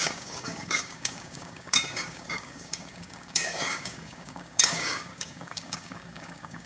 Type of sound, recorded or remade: remade